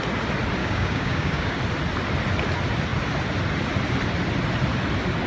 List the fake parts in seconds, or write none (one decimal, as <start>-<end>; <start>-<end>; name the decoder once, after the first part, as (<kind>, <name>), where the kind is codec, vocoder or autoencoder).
0.6-1.6 (codec, DAC)